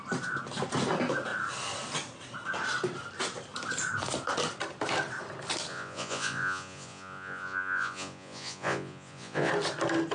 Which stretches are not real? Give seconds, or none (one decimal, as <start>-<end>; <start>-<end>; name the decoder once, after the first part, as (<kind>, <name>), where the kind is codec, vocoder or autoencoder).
5.7-9.5 (vocoder, Vocos)